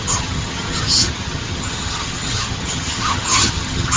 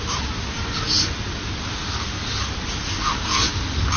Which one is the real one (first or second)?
second